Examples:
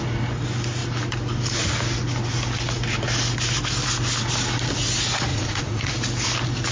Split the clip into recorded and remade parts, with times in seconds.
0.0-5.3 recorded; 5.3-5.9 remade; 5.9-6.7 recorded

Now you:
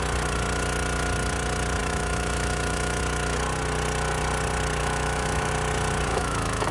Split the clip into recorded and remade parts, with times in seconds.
0.0-1.8 recorded; 1.8-3.0 remade; 3.0-4.8 recorded; 4.8-5.5 remade; 5.5-6.1 recorded; 6.1-6.7 remade

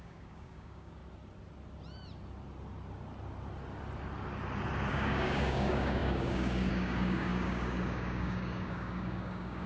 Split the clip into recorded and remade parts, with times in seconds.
0.0-1.0 remade; 1.0-4.9 recorded; 4.9-9.7 remade

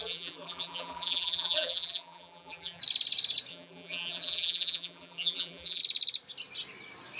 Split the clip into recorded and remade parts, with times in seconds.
0.0-2.8 remade; 2.8-3.5 recorded; 3.5-5.8 remade; 5.8-7.2 recorded